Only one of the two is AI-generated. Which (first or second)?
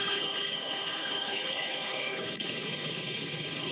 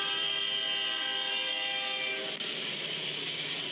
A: first